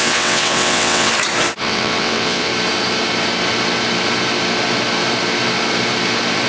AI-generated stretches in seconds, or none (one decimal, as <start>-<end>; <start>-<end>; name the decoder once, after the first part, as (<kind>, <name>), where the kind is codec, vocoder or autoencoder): 0.0-1.1 (vocoder, WaveNeXt); 1.6-2.5